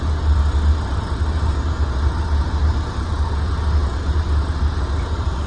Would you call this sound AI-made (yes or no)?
no